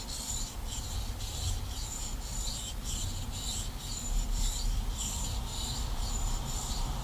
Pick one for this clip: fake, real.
fake